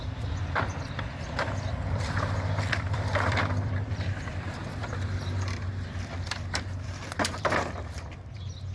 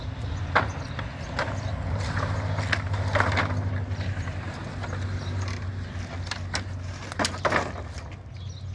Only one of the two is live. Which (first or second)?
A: second